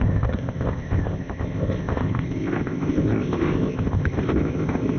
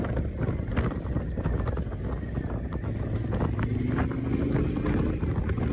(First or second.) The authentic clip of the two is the second